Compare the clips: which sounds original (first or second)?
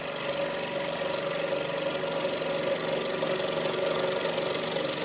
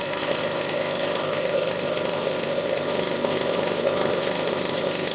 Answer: first